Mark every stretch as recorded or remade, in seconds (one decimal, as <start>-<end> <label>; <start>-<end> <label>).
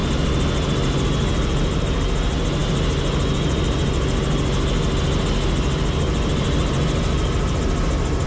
0.0-8.3 recorded